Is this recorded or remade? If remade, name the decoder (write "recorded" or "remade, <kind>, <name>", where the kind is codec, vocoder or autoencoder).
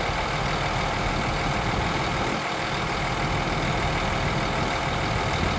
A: recorded